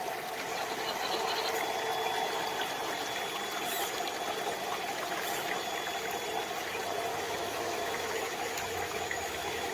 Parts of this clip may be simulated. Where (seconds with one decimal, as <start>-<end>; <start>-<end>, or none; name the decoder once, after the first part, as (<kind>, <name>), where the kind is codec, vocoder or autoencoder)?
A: 7.1-9.7 (autoencoder, DAC-VAE)